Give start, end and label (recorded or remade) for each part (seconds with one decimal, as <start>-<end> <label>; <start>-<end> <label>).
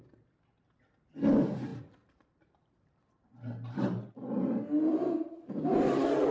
0.0-1.7 recorded; 1.7-4.2 remade; 4.2-4.9 recorded; 4.9-5.5 remade; 5.5-6.3 recorded